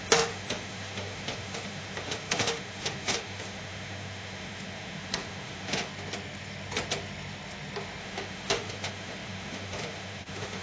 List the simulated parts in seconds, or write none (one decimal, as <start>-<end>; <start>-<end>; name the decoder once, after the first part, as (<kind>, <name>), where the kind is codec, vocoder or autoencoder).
0.0-5.9 (autoencoder, DAC-VAE); 8.0-10.6